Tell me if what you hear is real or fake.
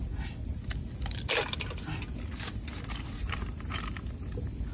real